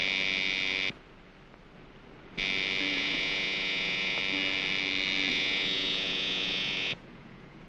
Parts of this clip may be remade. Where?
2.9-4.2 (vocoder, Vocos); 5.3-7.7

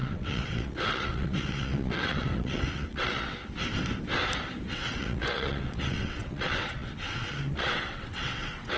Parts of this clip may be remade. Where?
0.0-3.4 (vocoder, WaveNeXt); 4.7-8.8

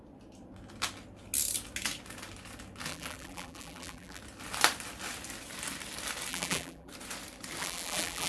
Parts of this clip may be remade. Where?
2.9-4.2 (vocoder, BigVGAN v2); 6.3-6.9; 7.6-8.3